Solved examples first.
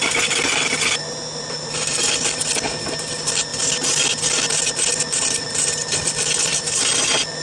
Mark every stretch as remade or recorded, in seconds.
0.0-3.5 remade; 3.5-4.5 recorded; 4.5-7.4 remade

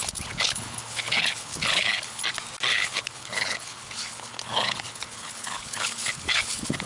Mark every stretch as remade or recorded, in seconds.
0.0-2.2 remade; 2.2-2.7 recorded; 2.7-6.9 remade

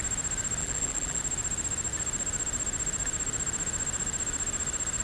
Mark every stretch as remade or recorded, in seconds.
0.0-0.6 recorded; 0.6-1.2 remade; 1.2-5.0 recorded

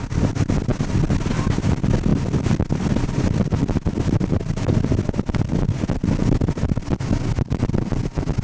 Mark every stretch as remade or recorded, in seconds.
0.0-8.4 recorded

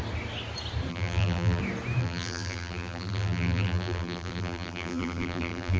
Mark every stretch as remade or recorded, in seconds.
0.0-0.9 recorded; 0.9-1.6 remade; 1.6-2.0 recorded; 2.0-5.8 remade